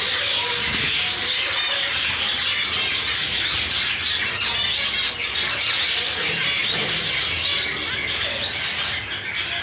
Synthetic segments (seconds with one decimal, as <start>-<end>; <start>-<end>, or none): 1.2-2.5